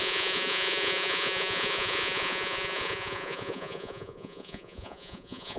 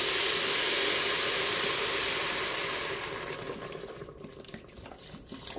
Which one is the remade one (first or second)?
first